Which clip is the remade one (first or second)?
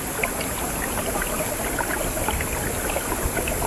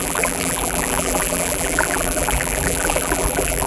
second